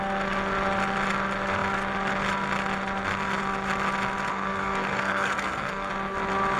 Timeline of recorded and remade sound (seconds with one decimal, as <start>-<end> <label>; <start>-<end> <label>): 0.0-4.3 recorded; 4.3-5.9 remade; 5.9-6.6 recorded

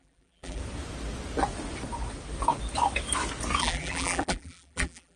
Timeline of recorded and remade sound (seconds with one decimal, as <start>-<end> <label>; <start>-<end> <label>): 0.0-0.6 remade; 0.6-3.6 recorded; 3.6-5.2 remade

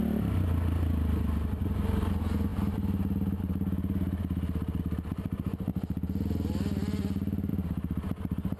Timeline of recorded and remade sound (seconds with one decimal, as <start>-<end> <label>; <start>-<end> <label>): 0.0-8.6 recorded

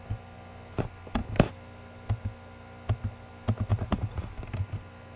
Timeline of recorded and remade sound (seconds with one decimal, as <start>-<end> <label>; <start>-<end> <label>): 0.0-3.7 recorded; 3.7-4.3 remade; 4.3-5.2 recorded